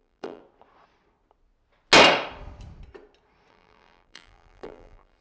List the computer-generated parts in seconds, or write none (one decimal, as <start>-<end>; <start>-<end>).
0.0-0.4; 3.5-5.2